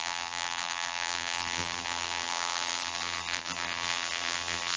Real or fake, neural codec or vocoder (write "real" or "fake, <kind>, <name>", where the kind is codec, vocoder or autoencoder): fake, vocoder, BigVGAN v2